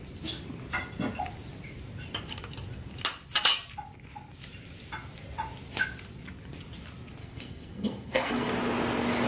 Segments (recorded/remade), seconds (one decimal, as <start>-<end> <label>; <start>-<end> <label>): 0.0-7.2 recorded; 7.2-8.5 remade; 8.5-9.3 recorded